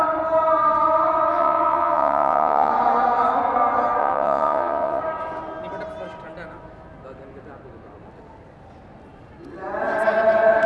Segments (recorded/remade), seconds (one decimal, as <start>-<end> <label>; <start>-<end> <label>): 0.0-1.3 recorded; 1.3-2.7 remade; 2.7-4.0 recorded; 4.0-5.0 remade; 5.0-10.7 recorded